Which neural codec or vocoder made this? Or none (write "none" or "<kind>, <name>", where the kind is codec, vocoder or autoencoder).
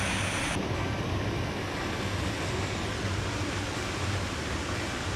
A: none